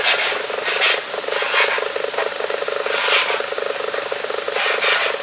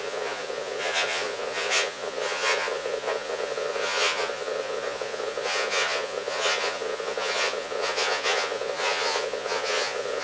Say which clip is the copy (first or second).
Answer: second